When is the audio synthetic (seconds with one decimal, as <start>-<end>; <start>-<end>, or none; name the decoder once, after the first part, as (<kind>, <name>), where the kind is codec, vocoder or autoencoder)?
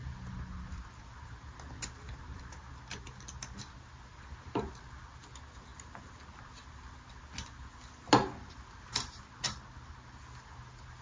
none